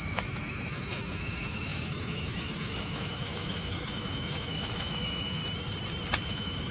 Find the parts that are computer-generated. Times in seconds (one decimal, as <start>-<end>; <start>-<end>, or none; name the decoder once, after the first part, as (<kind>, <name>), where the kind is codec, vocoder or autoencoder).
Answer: 0.0-5.4 (autoencoder, DAC-VAE); 6.3-6.7